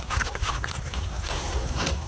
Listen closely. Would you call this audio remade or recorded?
remade